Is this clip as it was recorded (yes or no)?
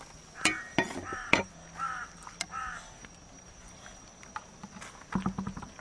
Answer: yes